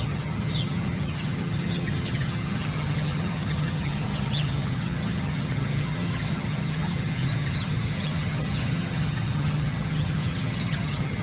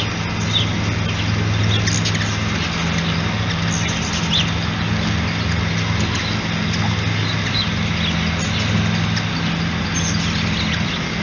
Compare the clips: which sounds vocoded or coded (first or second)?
first